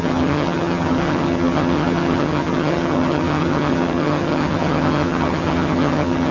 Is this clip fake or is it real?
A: fake